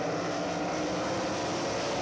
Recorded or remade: recorded